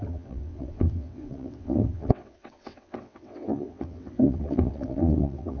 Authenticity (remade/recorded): remade